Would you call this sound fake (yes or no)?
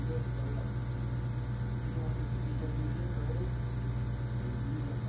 no